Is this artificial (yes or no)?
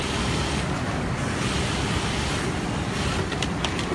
yes